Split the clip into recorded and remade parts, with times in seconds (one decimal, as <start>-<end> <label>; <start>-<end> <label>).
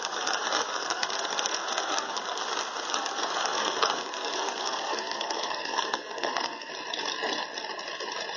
0.0-2.4 remade; 2.4-2.9 recorded; 2.9-6.7 remade; 6.7-8.4 recorded